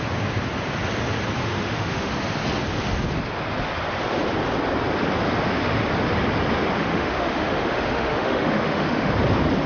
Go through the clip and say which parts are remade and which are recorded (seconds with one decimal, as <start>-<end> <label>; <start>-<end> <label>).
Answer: 0.0-1.4 recorded; 1.4-2.1 remade; 2.1-6.8 recorded; 6.8-9.1 remade; 9.1-9.7 recorded